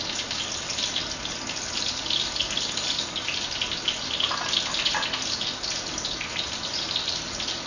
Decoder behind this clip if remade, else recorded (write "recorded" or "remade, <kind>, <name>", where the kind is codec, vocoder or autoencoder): recorded